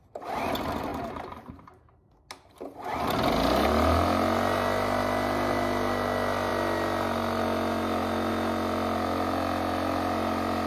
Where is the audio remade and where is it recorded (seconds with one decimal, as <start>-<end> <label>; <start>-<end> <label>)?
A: 0.0-10.7 recorded